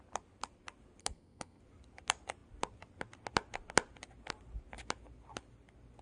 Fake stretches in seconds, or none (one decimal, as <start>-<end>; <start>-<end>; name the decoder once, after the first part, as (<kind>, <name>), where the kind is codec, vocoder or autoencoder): 1.0-1.6 (codec, SNAC)

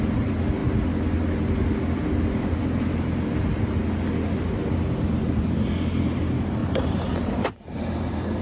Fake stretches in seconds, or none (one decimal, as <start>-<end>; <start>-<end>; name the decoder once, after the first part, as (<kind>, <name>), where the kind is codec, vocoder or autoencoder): 6.6-7.4 (vocoder, BigVGAN v2)

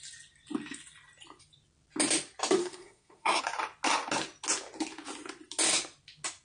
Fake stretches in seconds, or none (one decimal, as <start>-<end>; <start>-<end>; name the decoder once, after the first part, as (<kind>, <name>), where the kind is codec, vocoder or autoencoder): 2.6-3.4 (codec, SNAC)

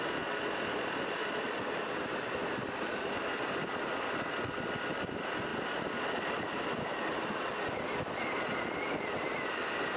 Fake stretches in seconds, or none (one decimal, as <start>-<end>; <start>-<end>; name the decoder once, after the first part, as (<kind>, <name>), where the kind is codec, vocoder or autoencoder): none

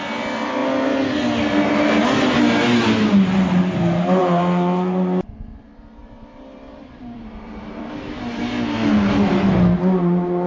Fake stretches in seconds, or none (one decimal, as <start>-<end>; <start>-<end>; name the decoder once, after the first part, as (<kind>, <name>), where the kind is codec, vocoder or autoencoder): 4.2-5.6 (vocoder, BigVGAN v2); 6.0-8.4